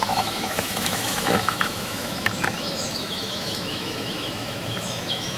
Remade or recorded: remade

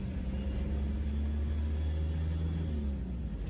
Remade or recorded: recorded